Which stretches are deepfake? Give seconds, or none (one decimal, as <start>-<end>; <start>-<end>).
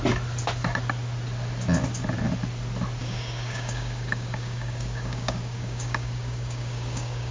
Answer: 3.0-7.3